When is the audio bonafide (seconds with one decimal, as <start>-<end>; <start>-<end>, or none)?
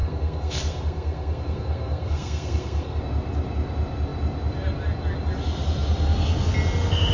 3.0-7.1